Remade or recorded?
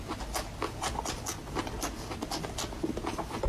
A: recorded